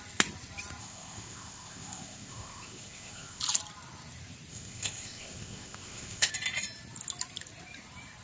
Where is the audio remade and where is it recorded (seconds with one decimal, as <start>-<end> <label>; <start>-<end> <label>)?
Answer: 0.0-0.8 recorded; 0.8-3.4 remade; 3.4-4.5 recorded; 4.5-6.3 remade; 6.3-8.2 recorded